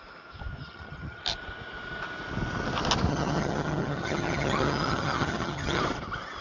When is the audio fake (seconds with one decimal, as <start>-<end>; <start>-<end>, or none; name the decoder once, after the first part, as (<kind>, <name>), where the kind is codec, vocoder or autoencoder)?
0.6-1.2 (vocoder, HiFi-GAN); 3.1-5.8